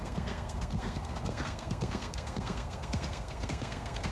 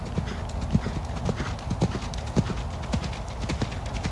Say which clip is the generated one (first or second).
first